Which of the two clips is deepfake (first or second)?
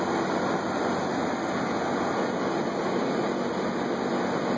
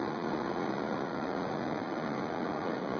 second